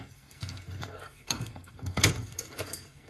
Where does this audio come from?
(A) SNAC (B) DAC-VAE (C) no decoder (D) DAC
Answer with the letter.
A